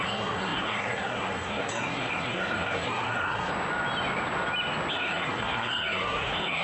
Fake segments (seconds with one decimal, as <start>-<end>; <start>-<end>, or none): 0.0-3.5; 4.9-6.6